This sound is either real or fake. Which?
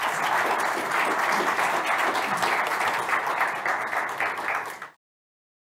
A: real